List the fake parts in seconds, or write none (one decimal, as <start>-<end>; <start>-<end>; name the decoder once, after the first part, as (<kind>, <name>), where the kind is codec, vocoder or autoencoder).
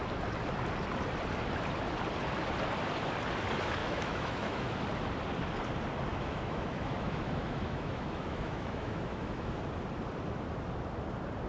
3.8-4.8 (autoencoder, DAC-VAE); 6.1-9.6